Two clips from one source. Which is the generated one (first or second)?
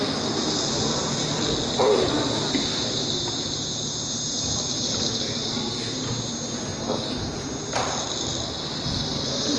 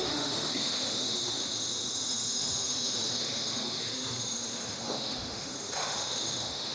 second